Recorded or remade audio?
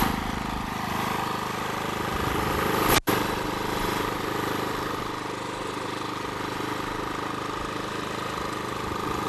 recorded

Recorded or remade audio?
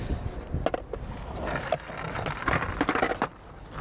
recorded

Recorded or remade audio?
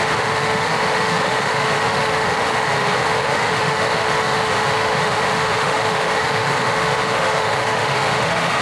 remade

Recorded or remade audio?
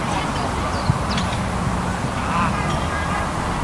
recorded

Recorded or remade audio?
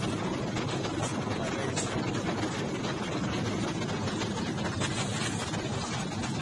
recorded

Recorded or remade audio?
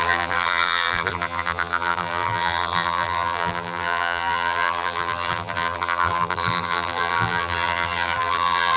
remade